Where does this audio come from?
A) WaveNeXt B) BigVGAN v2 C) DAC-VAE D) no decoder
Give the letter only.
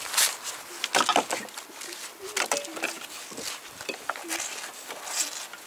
D